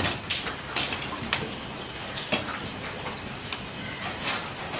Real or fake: real